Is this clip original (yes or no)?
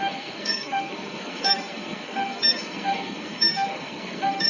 no